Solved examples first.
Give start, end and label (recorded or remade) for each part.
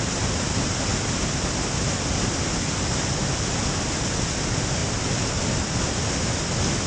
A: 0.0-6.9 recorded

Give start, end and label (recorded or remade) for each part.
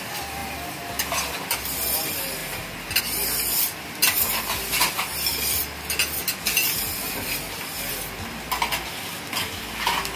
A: 0.0-10.2 recorded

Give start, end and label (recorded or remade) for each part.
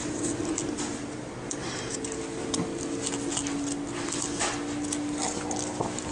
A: 0.0-1.6 recorded; 1.6-2.2 remade; 2.2-6.1 recorded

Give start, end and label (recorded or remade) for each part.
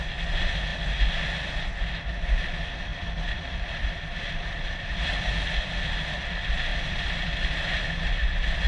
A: 0.0-2.9 recorded; 2.9-5.0 remade; 5.0-6.7 recorded; 6.7-8.0 remade; 8.0-8.7 recorded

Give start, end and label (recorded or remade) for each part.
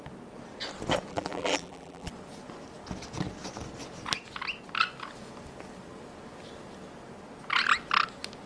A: 0.0-1.1 recorded; 1.1-2.1 remade; 2.1-8.5 recorded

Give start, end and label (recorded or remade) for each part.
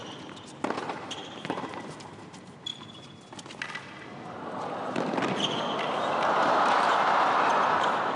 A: 0.0-0.8 recorded; 0.8-2.7 remade; 2.7-6.4 recorded; 6.4-8.2 remade